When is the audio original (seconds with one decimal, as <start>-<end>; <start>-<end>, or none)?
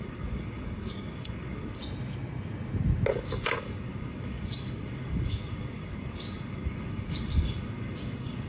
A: 1.8-3.1